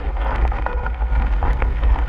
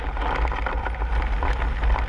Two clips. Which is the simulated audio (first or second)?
first